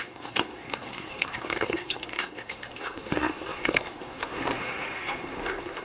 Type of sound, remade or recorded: remade